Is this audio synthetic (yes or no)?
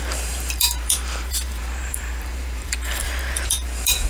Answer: yes